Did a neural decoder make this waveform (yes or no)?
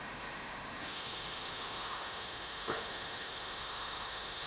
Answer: yes